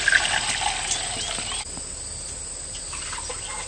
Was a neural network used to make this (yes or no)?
no